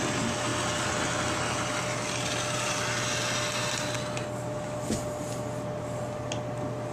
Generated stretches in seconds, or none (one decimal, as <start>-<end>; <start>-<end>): none